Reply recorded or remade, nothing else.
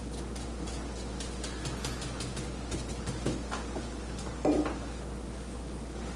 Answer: recorded